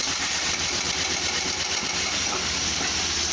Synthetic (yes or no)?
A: yes